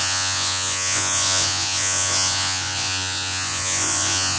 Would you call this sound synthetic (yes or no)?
yes